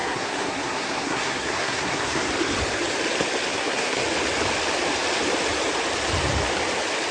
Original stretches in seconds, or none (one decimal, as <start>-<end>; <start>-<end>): 2.3-3.5; 4.0-7.1